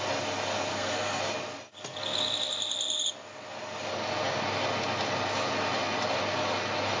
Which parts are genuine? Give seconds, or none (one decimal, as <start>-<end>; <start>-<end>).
0.0-0.7; 1.2-7.0